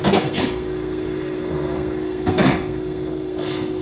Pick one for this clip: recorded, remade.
remade